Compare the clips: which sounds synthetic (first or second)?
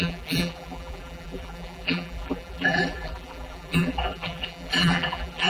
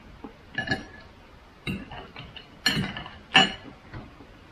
first